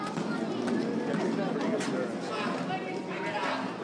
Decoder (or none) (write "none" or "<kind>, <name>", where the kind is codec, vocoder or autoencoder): none